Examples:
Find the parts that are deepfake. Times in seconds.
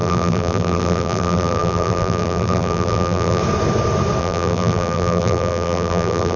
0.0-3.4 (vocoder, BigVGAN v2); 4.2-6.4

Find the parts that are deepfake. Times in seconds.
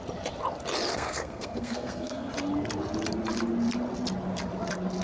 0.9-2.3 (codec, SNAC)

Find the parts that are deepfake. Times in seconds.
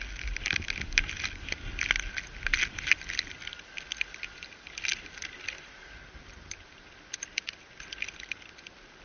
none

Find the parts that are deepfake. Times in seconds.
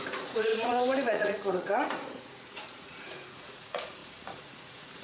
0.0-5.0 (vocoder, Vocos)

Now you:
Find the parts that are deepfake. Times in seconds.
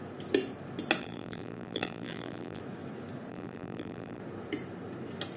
1.0-2.6 (vocoder, BigVGAN v2); 3.3-4.2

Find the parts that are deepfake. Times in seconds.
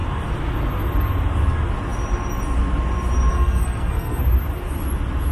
3.3-4.2 (codec, SNAC)